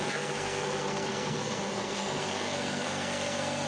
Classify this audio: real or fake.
fake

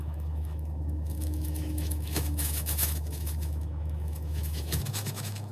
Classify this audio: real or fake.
fake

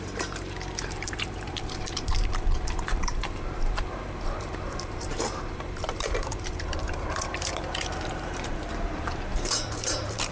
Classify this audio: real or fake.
fake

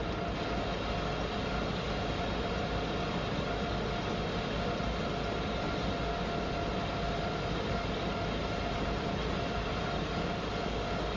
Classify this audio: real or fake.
real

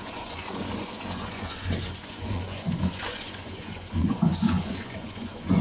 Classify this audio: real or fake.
fake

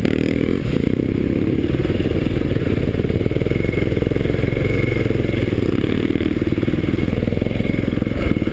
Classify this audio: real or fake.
fake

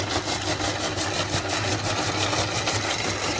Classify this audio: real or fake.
real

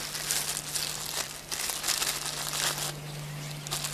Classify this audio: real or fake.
real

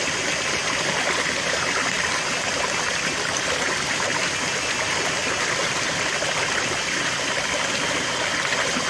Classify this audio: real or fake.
real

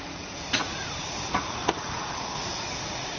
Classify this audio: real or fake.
fake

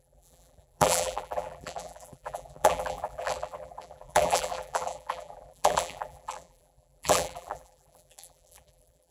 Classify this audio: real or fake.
fake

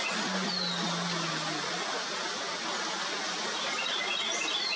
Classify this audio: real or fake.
real